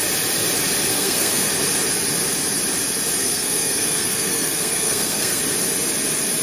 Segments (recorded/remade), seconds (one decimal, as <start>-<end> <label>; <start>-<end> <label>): 0.0-0.9 recorded; 0.9-1.5 remade; 1.5-3.2 recorded; 3.2-5.4 remade; 5.4-6.4 recorded